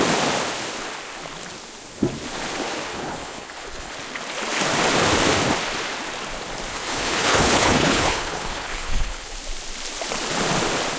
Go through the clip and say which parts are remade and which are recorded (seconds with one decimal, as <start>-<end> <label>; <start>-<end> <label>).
0.0-2.9 recorded; 2.9-3.9 remade; 3.9-6.7 recorded; 6.7-9.4 remade; 9.4-11.0 recorded